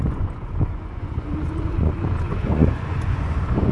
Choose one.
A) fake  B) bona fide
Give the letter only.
A